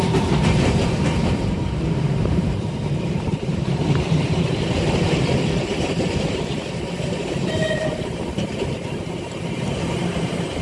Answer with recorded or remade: remade